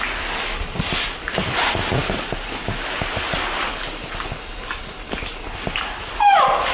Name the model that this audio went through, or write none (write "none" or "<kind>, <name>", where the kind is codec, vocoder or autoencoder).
none